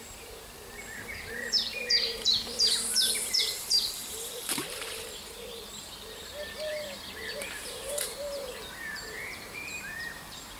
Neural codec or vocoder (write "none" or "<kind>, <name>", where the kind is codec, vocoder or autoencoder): vocoder, BigVGAN v2